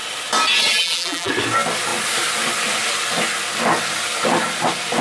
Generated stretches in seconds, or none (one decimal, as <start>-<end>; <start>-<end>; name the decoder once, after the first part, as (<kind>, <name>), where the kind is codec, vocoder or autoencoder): 0.7-1.3 (vocoder, BigVGAN v2)